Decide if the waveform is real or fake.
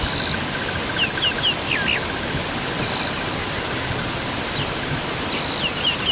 real